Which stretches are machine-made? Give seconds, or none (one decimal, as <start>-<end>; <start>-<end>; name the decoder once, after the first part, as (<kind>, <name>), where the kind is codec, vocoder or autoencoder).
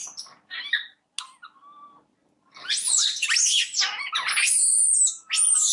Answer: none